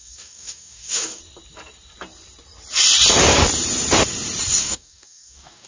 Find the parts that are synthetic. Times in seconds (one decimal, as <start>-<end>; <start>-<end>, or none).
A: 0.0-1.2; 4.6-5.7